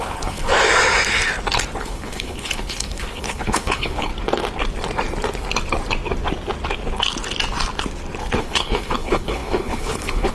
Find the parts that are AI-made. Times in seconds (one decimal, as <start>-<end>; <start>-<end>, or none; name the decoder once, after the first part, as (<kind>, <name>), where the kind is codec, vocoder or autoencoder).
0.0-0.5 (codec, HILCodec); 1.8-4.1; 8.4-10.3